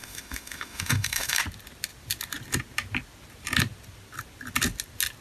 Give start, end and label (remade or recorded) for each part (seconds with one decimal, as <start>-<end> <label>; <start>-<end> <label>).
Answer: 0.0-1.4 remade; 1.4-5.2 recorded